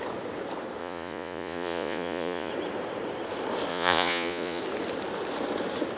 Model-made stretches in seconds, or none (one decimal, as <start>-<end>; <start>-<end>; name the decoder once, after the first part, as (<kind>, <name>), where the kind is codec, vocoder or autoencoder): 0.8-2.5 (vocoder, Vocos); 3.7-4.6